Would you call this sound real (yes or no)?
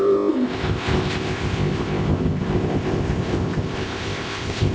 no